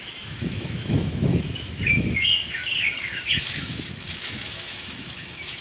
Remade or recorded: remade